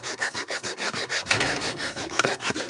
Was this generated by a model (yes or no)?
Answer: yes